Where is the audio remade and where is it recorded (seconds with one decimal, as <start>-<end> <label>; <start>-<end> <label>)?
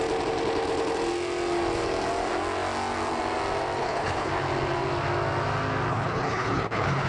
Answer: 0.0-3.8 recorded; 3.8-4.3 remade; 4.3-5.9 recorded; 5.9-7.1 remade